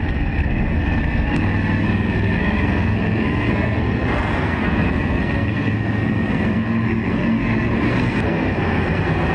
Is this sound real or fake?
fake